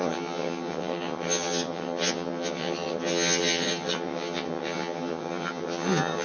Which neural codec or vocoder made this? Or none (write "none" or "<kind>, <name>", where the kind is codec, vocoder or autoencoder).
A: vocoder, HiFi-GAN